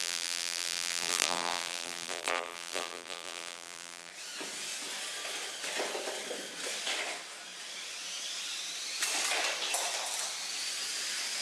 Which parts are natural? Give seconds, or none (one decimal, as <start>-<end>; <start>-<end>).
4.1-11.4